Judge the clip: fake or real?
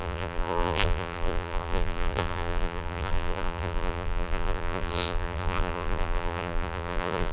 fake